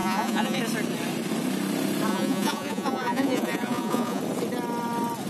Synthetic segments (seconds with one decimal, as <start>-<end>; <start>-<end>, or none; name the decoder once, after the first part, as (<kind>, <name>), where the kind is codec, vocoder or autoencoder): 0.0-0.6 (vocoder, Vocos); 2.1-4.2